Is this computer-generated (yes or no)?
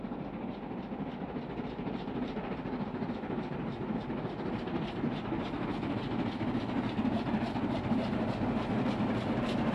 no